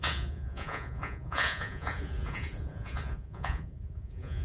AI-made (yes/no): yes